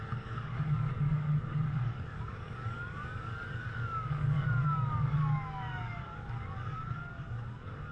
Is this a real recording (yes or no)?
no